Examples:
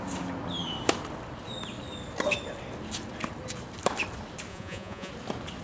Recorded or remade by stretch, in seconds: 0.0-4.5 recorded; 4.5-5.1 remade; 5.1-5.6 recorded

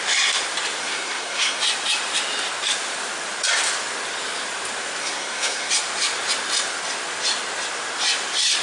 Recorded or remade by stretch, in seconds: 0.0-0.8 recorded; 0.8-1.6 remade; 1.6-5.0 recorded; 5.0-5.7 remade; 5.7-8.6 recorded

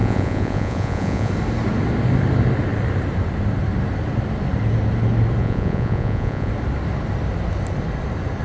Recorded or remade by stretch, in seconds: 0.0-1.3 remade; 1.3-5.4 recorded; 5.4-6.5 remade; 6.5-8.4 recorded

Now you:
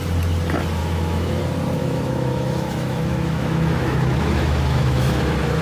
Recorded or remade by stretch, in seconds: 0.0-0.8 recorded; 0.8-1.4 remade; 1.4-1.8 recorded; 1.8-5.6 remade

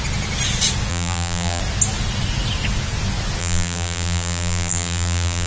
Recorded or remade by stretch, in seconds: 0.0-0.9 recorded; 0.9-1.6 remade; 1.6-3.4 recorded; 3.4-5.5 remade

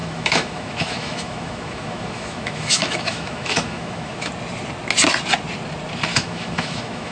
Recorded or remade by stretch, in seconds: 0.0-4.3 remade; 4.3-6.1 recorded; 6.1-7.1 remade

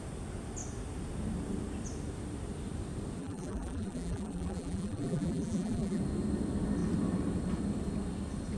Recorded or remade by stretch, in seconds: 0.0-3.2 recorded; 3.2-6.0 remade; 6.0-8.6 recorded

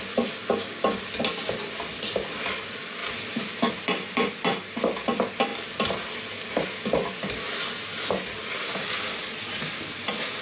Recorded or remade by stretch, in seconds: 0.0-10.4 recorded